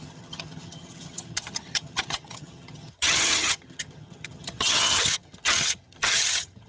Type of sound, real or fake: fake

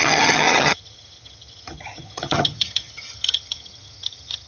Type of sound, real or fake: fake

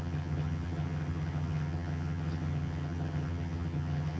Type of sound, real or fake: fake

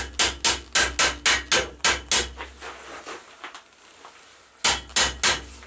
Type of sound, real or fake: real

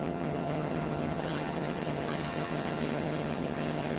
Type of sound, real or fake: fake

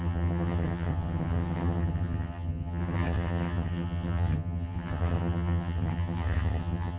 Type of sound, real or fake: fake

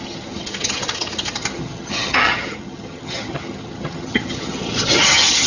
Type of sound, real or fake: fake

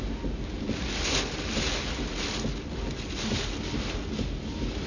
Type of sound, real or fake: real